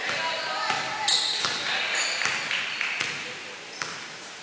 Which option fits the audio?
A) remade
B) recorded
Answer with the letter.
B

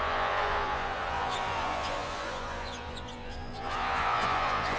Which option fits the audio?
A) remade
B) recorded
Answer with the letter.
A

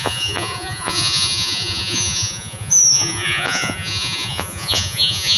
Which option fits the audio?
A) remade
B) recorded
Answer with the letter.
A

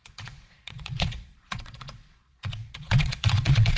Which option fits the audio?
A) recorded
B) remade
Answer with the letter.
B